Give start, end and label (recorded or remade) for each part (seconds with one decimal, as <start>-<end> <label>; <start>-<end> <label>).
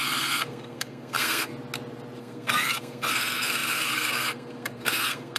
0.0-1.5 remade; 1.5-2.2 recorded; 2.2-5.4 remade